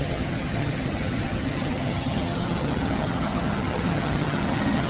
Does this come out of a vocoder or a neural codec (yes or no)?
yes